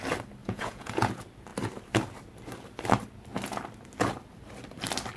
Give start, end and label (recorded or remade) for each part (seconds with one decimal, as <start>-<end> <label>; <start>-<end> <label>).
0.0-0.4 recorded; 0.4-1.1 remade; 1.1-5.2 recorded

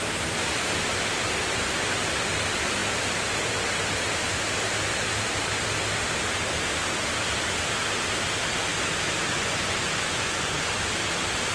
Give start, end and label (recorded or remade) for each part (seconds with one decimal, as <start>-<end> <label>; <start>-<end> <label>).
0.0-9.3 recorded; 9.3-10.7 remade; 10.7-11.5 recorded